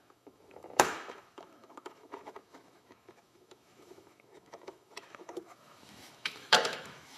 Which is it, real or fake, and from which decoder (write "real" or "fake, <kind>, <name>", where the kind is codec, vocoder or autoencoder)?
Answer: fake, autoencoder, DAC-VAE